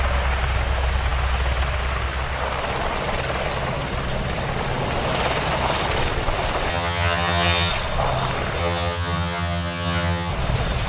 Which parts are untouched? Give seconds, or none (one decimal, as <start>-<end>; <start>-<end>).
0.0-6.7; 7.7-8.6; 10.3-10.9